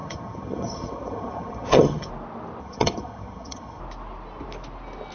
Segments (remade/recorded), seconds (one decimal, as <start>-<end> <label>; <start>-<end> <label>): 0.0-2.1 remade; 2.1-2.6 recorded; 2.6-3.8 remade; 3.8-5.1 recorded